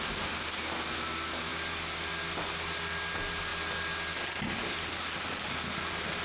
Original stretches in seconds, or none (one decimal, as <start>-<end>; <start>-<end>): 0.0-6.2